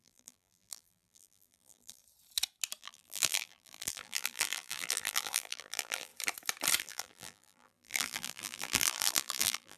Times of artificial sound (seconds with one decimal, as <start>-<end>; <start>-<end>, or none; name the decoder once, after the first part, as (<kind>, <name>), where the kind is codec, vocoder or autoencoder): 0.0-2.0 (vocoder, BigVGAN v2); 2.8-6.1; 6.8-9.8